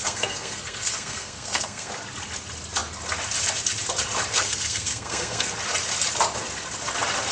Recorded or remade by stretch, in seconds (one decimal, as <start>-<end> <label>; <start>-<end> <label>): 0.0-1.9 remade; 1.9-4.3 recorded; 4.3-5.5 remade; 5.5-7.3 recorded

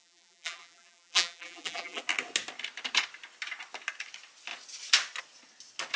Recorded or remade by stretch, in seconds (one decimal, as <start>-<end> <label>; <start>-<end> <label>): 0.0-2.0 remade; 2.0-6.0 recorded

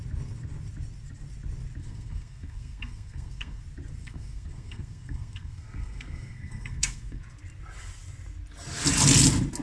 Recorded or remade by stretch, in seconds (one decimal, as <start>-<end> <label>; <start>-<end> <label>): 0.0-1.8 recorded; 1.8-3.6 remade; 3.6-4.0 recorded; 4.0-7.2 remade; 7.2-9.6 recorded

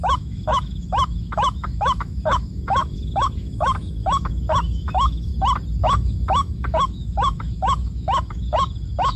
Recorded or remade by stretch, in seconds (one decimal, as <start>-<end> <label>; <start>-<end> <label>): 0.0-5.3 remade; 5.3-5.8 recorded; 5.8-9.2 remade

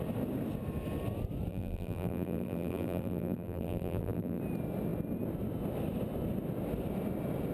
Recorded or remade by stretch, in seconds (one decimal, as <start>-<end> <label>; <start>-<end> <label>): 0.0-1.5 recorded; 1.5-4.4 remade; 4.4-7.5 recorded

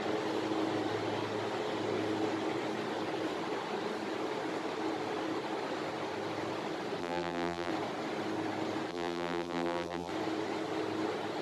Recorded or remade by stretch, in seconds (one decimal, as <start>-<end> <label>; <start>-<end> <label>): 0.0-7.0 recorded; 7.0-7.7 remade; 7.7-8.9 recorded; 8.9-10.1 remade; 10.1-11.4 recorded